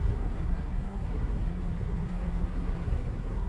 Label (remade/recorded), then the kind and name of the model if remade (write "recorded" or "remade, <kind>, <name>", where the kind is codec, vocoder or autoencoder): remade, codec, SNAC